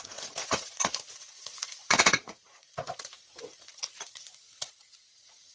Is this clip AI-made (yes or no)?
yes